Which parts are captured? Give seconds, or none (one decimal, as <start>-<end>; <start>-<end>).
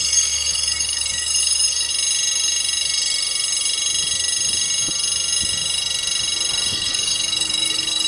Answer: 1.9-6.7